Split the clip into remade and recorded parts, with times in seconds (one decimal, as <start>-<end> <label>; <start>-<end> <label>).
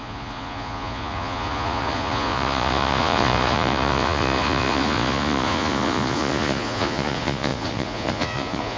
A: 0.0-8.8 remade